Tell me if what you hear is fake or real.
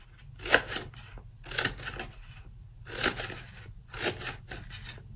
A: real